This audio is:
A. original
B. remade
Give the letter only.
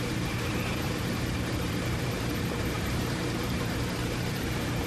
B